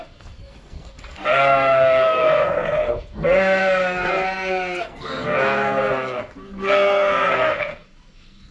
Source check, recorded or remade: remade